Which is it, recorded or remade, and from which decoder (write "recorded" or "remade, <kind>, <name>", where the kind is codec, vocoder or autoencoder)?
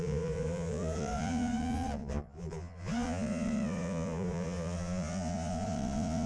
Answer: remade, vocoder, Vocos